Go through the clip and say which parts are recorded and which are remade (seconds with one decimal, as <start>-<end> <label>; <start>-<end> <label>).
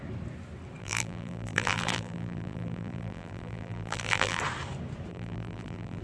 0.0-0.8 recorded; 0.8-4.4 remade; 4.4-5.1 recorded; 5.1-6.0 remade